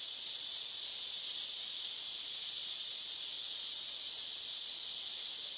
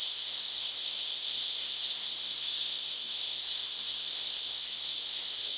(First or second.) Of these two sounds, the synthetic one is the second